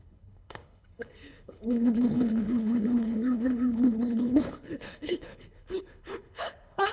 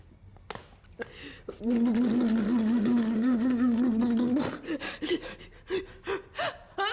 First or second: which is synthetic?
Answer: first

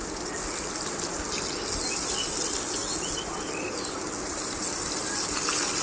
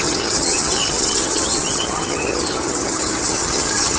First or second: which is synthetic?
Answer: second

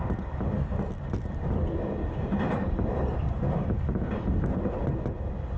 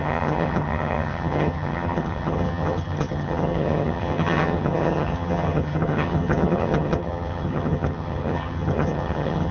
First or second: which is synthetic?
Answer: second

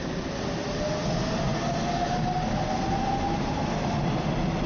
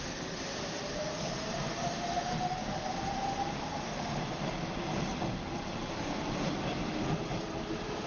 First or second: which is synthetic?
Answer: second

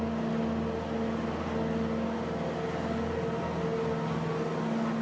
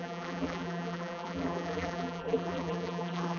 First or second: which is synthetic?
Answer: second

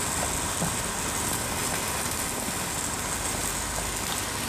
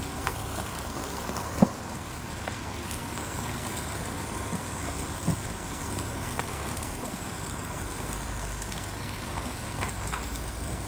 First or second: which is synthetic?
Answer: second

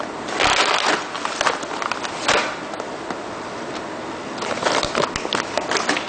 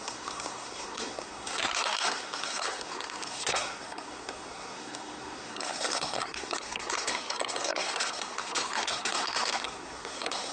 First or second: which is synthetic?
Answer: second